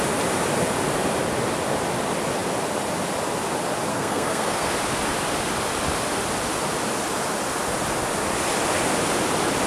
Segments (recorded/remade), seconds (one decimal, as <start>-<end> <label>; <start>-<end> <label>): 0.0-3.9 recorded; 3.9-4.7 remade; 4.7-9.7 recorded